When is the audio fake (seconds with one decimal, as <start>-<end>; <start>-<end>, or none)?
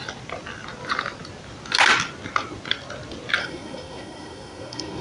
3.4-5.0